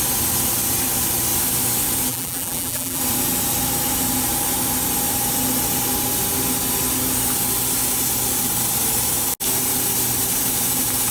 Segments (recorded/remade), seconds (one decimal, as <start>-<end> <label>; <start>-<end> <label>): 0.0-2.1 recorded; 2.1-3.0 remade; 3.0-11.1 recorded